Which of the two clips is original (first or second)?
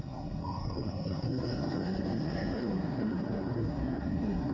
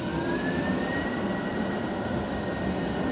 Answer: second